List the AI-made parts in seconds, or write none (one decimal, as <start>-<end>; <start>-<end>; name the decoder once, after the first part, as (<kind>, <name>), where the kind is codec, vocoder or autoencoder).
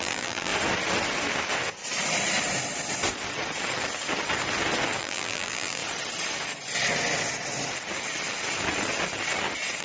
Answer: 0.0-0.5 (vocoder, BigVGAN v2); 5.0-5.8